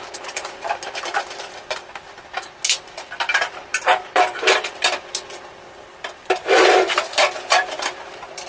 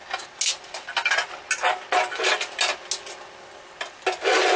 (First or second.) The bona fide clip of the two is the second